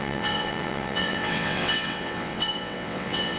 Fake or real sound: fake